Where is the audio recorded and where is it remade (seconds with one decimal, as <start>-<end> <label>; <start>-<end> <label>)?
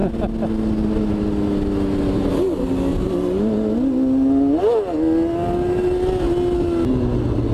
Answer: 0.0-7.5 recorded